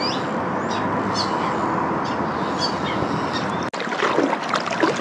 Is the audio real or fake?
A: real